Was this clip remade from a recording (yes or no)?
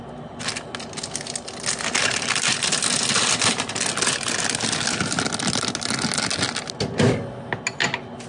no